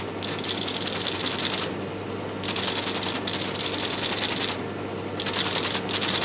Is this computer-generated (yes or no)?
no